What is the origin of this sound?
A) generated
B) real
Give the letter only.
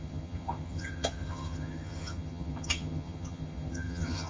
A